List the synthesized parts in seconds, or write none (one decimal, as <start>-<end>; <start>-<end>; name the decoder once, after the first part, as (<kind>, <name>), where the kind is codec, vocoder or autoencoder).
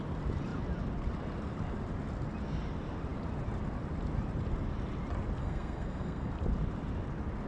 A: 5.4-6.3 (codec, SNAC)